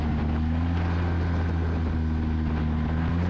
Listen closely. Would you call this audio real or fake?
real